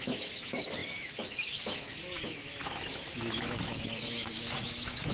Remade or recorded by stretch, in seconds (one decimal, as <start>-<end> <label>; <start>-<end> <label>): 0.0-5.1 remade